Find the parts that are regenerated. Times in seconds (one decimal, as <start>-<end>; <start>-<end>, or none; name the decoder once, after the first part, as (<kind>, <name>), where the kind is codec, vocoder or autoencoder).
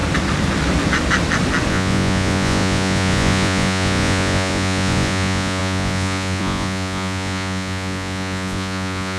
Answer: 1.7-9.2 (vocoder, Vocos)